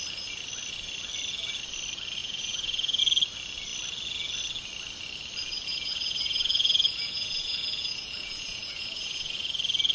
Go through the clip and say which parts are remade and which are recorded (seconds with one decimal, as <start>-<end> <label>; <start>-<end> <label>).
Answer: 0.0-2.2 recorded; 2.2-3.0 remade; 3.0-5.7 recorded; 5.7-9.3 remade; 9.3-9.9 recorded